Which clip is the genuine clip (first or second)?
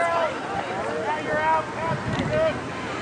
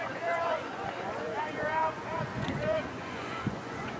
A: first